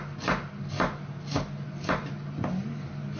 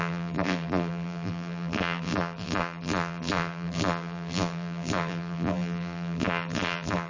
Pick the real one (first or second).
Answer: first